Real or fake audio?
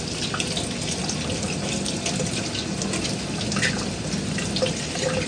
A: real